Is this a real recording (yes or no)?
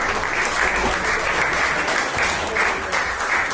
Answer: yes